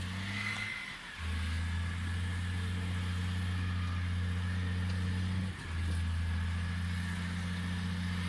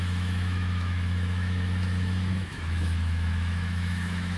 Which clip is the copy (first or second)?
second